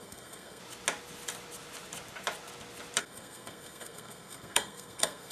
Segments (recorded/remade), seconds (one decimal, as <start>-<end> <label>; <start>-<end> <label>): 0.0-0.6 remade; 0.6-3.0 recorded; 3.0-5.3 remade